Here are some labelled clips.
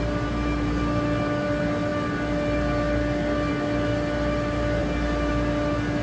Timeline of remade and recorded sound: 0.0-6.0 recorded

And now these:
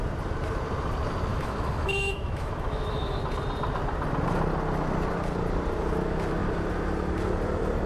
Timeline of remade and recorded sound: 0.0-1.3 recorded; 1.3-3.2 remade; 3.2-7.9 recorded

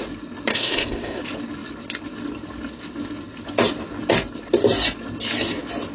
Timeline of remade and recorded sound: 0.0-0.5 recorded; 0.5-1.2 remade; 1.2-5.9 recorded

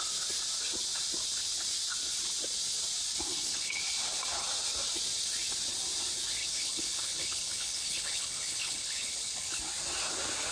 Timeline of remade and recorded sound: 0.0-3.3 recorded; 3.3-3.8 remade; 3.8-6.4 recorded; 6.4-9.6 remade; 9.6-10.5 recorded

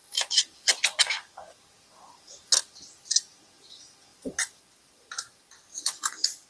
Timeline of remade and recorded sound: 0.0-0.7 remade; 0.7-4.1 recorded; 4.1-5.1 remade; 5.1-5.7 recorded; 5.7-6.5 remade

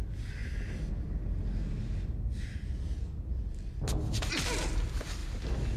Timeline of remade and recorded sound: 0.0-5.8 recorded